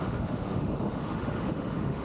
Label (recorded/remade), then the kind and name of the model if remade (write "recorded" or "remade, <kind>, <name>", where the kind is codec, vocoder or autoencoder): remade, autoencoder, DAC-VAE